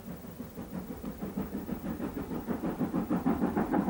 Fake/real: fake